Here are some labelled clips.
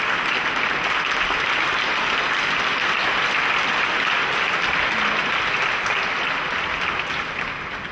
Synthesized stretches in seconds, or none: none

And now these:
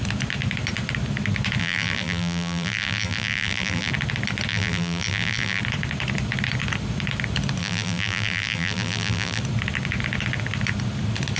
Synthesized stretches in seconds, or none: 1.6-3.9 (vocoder, BigVGAN v2); 4.5-5.6; 7.6-9.4

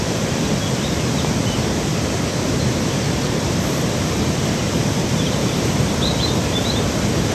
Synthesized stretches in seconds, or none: 1.9-5.9 (vocoder, BigVGAN v2)

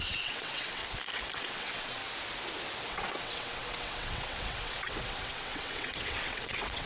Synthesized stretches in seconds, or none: 0.0-0.8 (vocoder, WaveNeXt); 1.4-2.0; 2.9-6.9

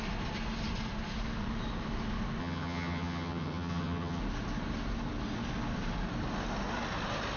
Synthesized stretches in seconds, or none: 2.4-4.2 (vocoder, HiFi-GAN)

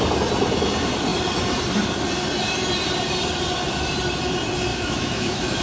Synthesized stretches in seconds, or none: 4.7-5.6 (autoencoder, DAC-VAE)

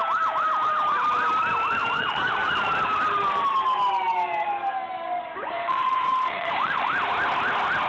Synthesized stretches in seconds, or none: 1.8-2.5 (vocoder, Vocos); 5.3-6.9